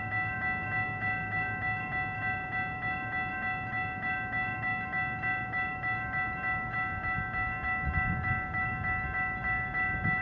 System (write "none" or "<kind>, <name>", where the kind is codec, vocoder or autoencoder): none